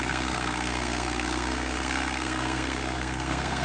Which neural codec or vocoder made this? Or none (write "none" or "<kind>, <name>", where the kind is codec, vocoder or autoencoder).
codec, SNAC